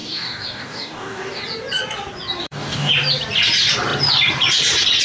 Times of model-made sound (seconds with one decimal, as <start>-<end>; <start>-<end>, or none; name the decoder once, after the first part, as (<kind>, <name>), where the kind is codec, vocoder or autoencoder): 0.0-1.4 (codec, DAC); 2.4-2.9